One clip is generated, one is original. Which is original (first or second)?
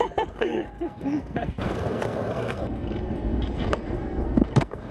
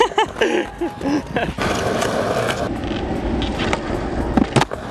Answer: second